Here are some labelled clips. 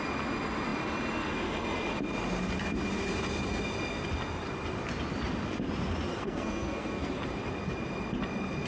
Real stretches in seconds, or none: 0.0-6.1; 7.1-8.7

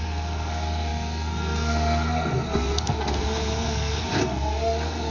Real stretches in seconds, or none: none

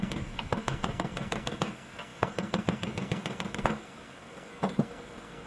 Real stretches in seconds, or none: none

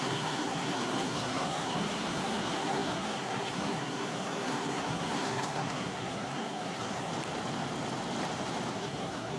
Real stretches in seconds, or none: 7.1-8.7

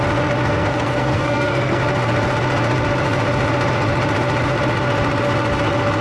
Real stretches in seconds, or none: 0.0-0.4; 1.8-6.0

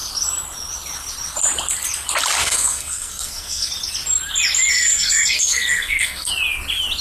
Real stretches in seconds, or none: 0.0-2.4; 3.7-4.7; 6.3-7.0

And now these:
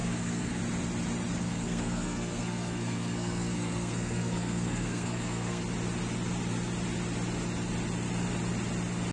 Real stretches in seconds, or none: 0.6-1.4; 5.6-9.1